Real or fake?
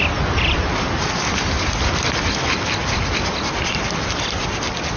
fake